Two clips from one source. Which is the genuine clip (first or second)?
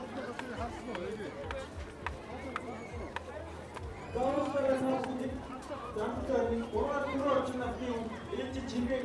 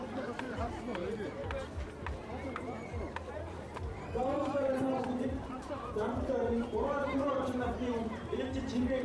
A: first